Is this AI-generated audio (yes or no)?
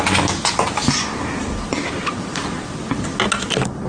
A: no